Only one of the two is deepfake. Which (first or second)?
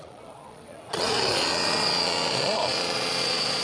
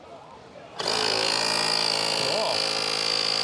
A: first